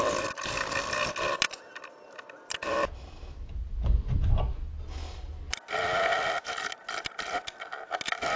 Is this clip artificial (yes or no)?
no